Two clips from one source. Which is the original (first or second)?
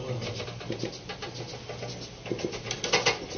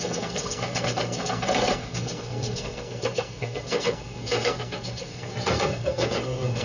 first